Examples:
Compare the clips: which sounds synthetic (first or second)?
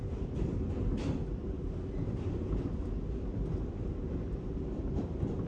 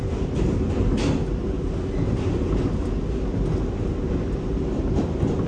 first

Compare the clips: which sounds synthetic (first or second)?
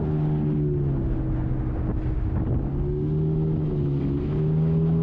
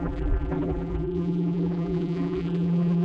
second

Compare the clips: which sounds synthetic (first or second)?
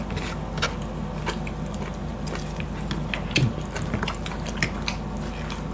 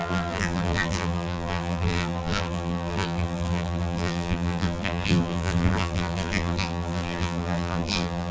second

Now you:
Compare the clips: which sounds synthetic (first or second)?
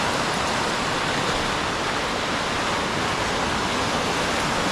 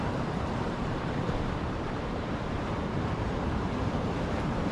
second